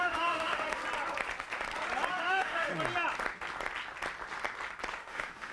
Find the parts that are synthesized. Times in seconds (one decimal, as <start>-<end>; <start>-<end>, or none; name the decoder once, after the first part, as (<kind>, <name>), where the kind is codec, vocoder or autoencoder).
0.0-0.8 (autoencoder, DAC-VAE); 2.1-2.7; 5.0-5.5

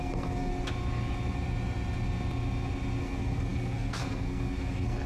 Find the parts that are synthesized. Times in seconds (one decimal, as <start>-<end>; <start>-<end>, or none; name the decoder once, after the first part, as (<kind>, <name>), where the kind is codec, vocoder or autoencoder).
0.0-0.5 (codec, SNAC); 3.0-5.1

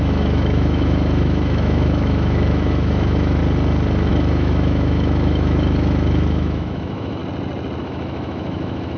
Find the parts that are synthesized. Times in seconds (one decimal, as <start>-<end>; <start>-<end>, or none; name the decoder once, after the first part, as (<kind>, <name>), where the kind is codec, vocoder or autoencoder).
0.0-3.4 (autoencoder, DAC-VAE); 4.1-7.2; 7.8-9.0

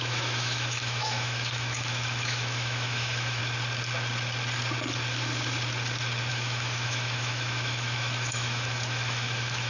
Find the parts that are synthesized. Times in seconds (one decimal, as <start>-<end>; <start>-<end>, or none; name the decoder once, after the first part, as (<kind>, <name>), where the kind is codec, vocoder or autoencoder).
0.0-3.4 (autoencoder, DAC-VAE); 6.3-9.7

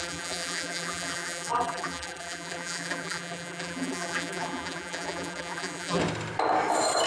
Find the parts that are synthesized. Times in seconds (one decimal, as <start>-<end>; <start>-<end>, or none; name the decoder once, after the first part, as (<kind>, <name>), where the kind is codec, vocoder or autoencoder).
0.0-6.0 (vocoder, BigVGAN v2)

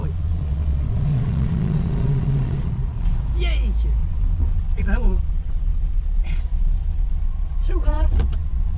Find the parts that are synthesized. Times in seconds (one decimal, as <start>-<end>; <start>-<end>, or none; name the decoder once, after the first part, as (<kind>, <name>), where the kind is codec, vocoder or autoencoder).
0.0-3.2 (vocoder, Vocos); 4.0-8.8